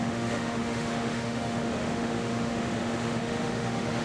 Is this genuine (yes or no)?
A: no